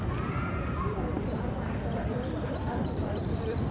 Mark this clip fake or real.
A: fake